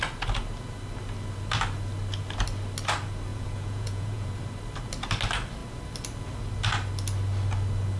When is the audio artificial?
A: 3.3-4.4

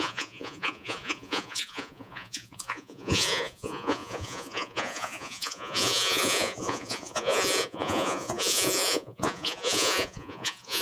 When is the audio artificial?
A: 0.0-10.8

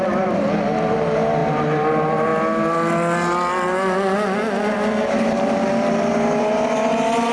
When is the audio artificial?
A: 0.0-2.3; 6.4-7.3